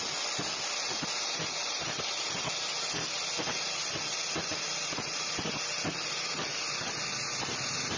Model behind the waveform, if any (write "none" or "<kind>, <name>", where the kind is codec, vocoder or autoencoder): none